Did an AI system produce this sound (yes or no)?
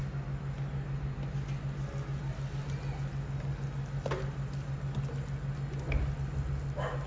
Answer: no